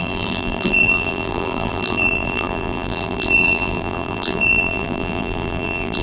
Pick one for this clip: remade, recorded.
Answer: remade